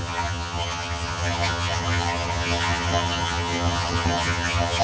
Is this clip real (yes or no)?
no